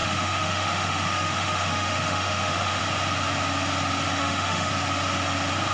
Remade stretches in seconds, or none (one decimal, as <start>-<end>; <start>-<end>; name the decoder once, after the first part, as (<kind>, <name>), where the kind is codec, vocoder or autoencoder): 0.0-2.8 (autoencoder, DAC-VAE); 4.2-4.7